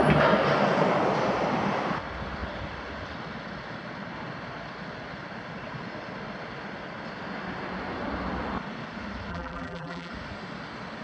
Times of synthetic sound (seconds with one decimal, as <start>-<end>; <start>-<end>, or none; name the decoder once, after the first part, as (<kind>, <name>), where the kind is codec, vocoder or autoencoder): 9.3-10.1 (vocoder, BigVGAN v2)